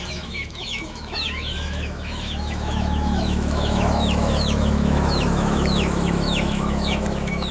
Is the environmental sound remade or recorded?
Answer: remade